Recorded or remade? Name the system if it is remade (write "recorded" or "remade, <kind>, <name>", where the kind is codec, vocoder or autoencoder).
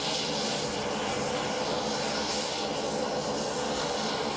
recorded